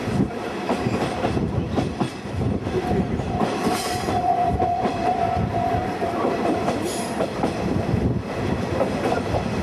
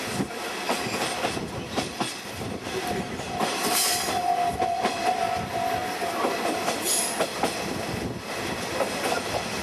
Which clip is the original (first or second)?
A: second